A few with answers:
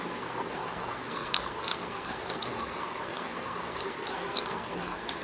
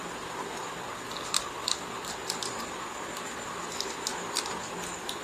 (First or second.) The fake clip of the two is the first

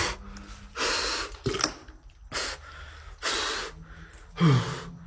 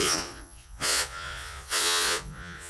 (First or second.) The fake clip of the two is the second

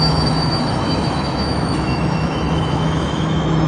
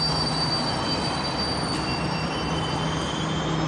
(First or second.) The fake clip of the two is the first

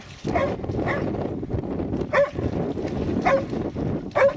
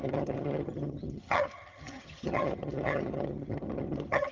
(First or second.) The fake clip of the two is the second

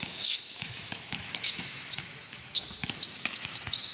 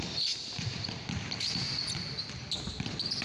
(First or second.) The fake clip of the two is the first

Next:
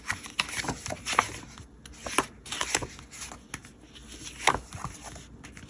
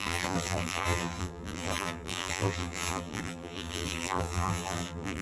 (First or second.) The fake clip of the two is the second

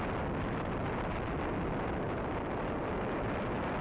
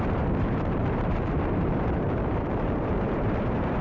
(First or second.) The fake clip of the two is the second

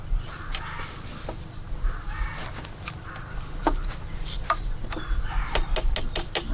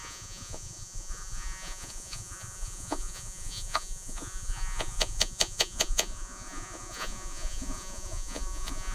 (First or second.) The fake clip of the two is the second